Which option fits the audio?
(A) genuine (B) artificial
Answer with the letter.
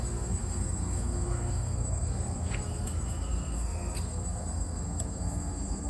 B